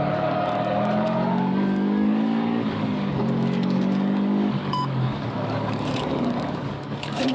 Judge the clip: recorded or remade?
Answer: remade